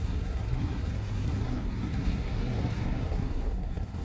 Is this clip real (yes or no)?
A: no